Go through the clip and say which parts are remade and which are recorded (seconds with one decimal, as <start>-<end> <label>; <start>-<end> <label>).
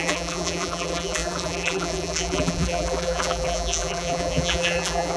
0.0-5.2 remade